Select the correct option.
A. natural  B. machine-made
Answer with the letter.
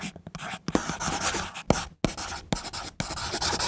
A